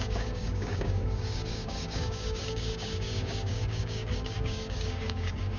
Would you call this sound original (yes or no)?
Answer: no